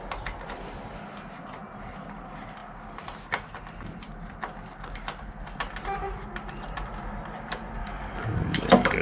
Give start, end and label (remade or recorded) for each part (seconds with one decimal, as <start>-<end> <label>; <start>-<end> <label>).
0.0-7.8 recorded; 7.8-9.0 remade